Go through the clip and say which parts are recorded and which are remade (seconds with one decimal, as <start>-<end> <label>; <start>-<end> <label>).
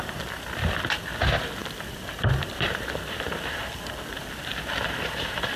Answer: 0.0-5.6 recorded